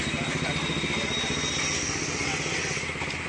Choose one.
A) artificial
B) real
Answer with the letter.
B